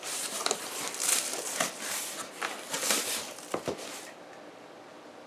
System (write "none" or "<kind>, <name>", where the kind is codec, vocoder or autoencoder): vocoder, BigVGAN v2